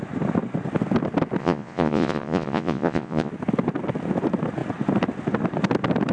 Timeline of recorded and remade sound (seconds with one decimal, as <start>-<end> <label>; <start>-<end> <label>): 0.0-1.4 recorded; 1.4-3.3 remade; 3.3-6.1 recorded